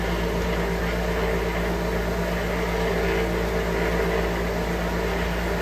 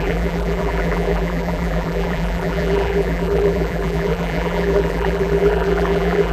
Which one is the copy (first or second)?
second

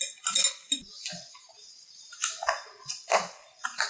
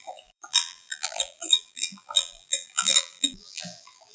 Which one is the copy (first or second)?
second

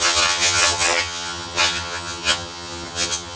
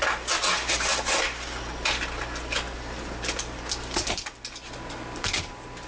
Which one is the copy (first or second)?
first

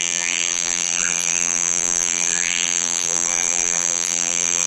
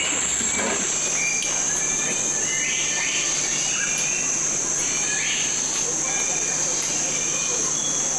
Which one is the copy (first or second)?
first